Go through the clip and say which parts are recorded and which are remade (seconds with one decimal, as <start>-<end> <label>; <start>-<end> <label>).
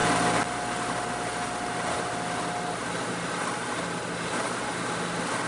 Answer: 0.0-5.5 recorded